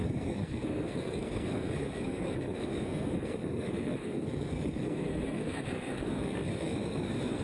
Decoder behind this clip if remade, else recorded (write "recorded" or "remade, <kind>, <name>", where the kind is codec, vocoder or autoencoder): remade, codec, SNAC